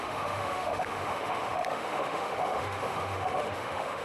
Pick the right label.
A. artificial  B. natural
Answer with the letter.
A